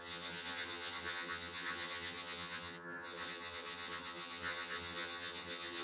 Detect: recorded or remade remade